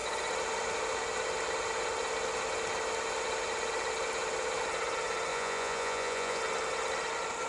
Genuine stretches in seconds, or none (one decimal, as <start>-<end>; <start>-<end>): 0.0-5.3; 6.4-7.5